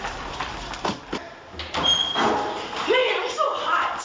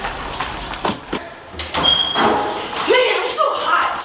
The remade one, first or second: second